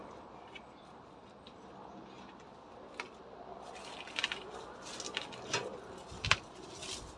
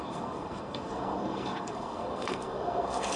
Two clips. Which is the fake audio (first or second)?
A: second